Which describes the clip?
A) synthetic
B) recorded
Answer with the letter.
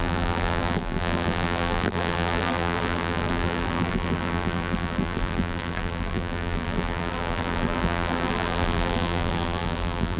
A